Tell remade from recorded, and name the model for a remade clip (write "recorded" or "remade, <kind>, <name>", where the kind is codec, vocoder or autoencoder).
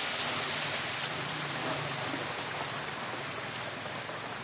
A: recorded